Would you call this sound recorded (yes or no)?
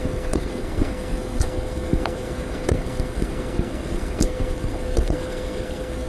no